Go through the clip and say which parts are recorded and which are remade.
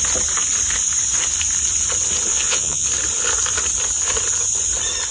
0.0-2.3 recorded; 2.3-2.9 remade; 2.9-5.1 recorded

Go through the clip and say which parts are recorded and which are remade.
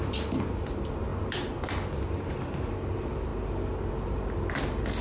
0.0-5.0 recorded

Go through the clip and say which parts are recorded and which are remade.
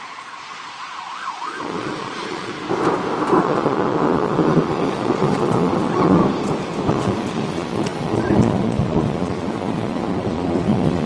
0.0-2.5 remade; 2.5-3.4 recorded; 3.4-6.2 remade; 6.2-6.9 recorded; 6.9-11.1 remade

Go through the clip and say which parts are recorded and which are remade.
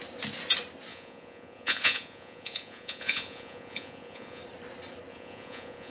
0.0-0.9 recorded; 0.9-4.4 remade; 4.4-5.1 recorded; 5.1-5.9 remade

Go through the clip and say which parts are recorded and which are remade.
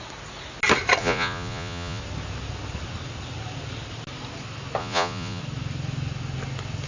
0.0-1.0 recorded; 1.0-2.0 remade; 2.0-4.8 recorded; 4.8-5.4 remade; 5.4-6.9 recorded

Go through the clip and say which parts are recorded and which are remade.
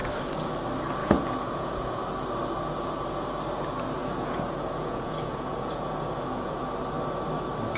0.0-1.0 recorded; 1.0-2.0 remade; 2.0-4.0 recorded; 4.0-6.6 remade; 6.6-7.8 recorded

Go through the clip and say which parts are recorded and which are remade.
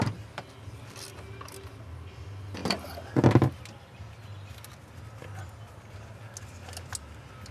0.0-7.5 recorded